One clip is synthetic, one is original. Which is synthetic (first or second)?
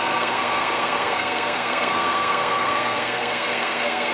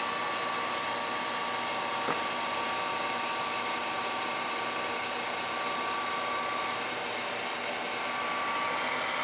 first